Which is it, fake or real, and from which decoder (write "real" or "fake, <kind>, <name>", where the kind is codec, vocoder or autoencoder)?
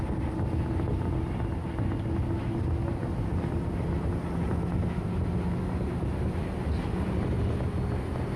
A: real